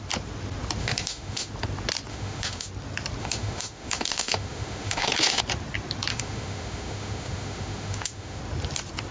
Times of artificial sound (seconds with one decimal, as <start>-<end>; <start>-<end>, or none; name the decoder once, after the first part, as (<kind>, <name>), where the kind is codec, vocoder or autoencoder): 0.8-1.5 (autoencoder, DAC-VAE); 2.1-2.7; 3.2-5.4; 6.1-8.4